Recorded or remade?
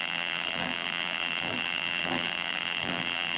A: remade